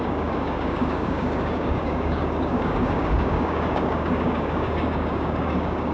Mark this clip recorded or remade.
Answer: remade